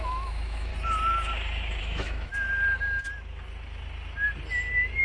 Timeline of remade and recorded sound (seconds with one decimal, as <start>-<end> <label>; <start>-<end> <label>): 0.0-0.7 remade; 0.7-1.8 recorded; 1.8-2.3 remade; 2.3-5.0 recorded